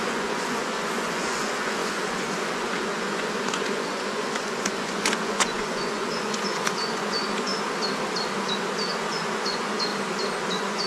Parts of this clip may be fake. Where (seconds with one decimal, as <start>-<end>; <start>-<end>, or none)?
0.0-7.5; 9.1-9.9; 10.5-10.9